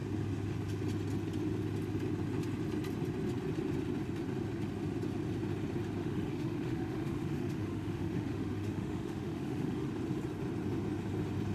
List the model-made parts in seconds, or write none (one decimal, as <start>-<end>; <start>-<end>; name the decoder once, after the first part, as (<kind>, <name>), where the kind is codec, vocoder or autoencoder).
6.0-9.9 (autoencoder, DAC-VAE)